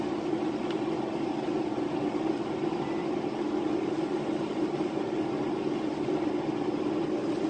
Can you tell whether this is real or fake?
real